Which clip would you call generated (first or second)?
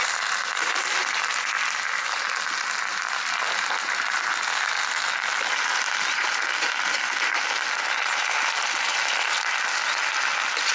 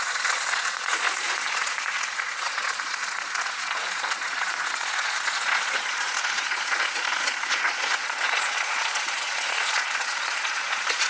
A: second